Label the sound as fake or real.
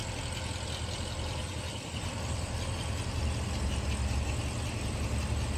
real